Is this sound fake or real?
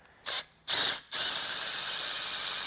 real